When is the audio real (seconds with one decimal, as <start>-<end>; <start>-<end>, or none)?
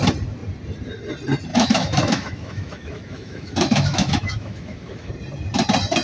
0.0-1.5; 5.1-6.0